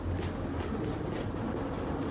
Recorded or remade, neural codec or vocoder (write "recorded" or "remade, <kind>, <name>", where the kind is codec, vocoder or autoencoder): recorded